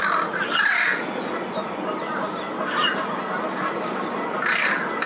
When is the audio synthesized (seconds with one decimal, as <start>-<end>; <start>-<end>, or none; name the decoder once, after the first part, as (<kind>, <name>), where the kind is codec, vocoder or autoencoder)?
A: none